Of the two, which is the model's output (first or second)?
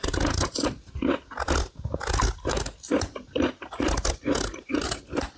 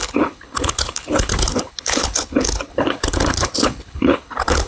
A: second